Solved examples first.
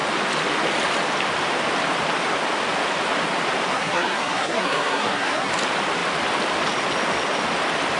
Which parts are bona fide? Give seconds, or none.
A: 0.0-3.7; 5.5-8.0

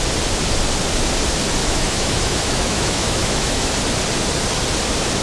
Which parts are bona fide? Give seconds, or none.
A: 0.0-1.6; 3.7-5.2

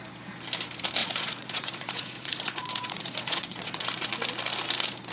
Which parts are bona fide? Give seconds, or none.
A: 0.0-1.0; 4.1-5.1